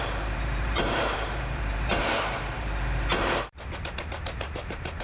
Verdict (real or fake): fake